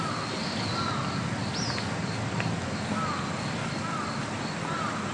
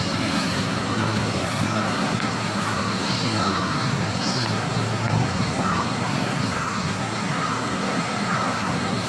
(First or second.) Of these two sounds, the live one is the first